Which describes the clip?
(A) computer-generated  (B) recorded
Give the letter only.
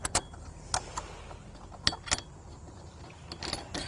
B